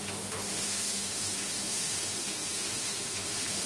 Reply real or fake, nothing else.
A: fake